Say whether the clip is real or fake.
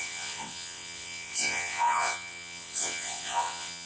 fake